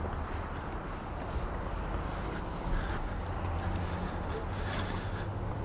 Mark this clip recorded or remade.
recorded